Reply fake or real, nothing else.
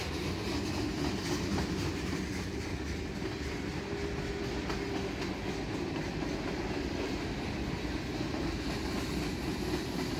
real